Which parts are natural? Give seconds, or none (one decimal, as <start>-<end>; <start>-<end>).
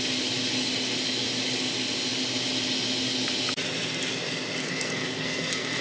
0.0-4.6